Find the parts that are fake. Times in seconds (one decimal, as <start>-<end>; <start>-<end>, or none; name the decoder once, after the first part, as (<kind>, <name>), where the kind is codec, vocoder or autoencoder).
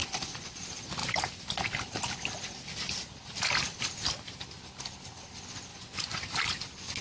0.0-0.6 (vocoder, Vocos); 5.7-6.2